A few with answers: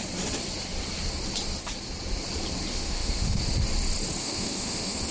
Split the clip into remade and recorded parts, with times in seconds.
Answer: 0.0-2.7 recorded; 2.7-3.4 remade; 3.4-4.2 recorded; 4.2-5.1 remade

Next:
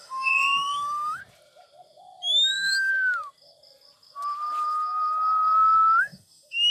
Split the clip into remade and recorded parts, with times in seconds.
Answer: 0.0-1.2 remade; 1.2-2.5 recorded; 2.5-2.9 remade; 2.9-6.0 recorded; 6.0-6.7 remade

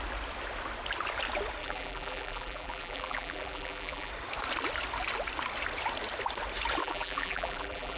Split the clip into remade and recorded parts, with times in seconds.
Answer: 0.0-1.6 recorded; 1.6-4.1 remade; 4.1-6.8 recorded; 6.8-8.0 remade